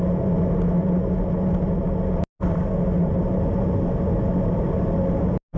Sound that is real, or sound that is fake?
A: real